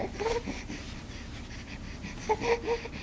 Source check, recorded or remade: recorded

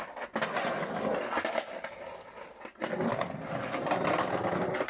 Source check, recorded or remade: recorded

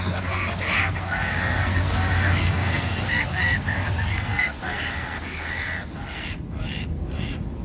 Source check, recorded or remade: remade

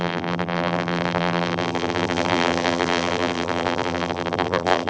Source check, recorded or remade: remade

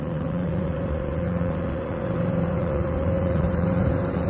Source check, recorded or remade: remade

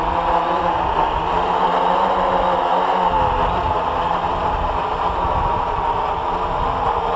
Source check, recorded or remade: recorded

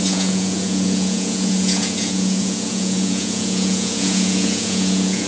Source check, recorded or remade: remade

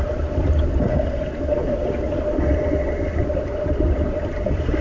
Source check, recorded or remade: recorded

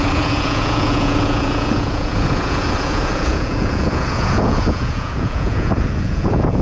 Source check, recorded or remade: remade